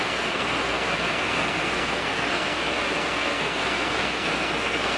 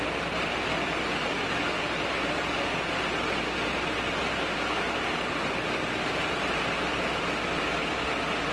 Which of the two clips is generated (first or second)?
first